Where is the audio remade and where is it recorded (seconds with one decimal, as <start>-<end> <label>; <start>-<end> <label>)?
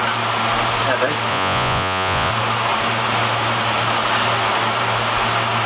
0.0-1.3 recorded; 1.3-2.3 remade; 2.3-5.7 recorded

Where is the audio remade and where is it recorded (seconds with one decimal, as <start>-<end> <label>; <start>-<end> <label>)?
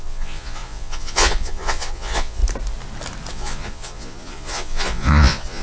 0.0-2.4 remade; 2.4-3.3 recorded; 3.3-5.6 remade